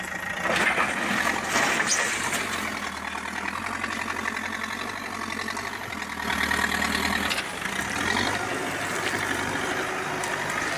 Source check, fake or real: real